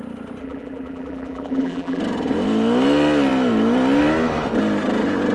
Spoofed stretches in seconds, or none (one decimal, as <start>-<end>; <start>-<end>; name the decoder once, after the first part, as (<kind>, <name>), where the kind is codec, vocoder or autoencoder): 0.4-2.0 (vocoder, BigVGAN v2)